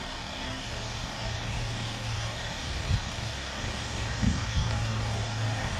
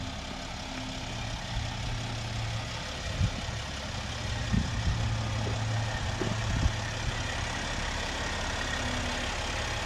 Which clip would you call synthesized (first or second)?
first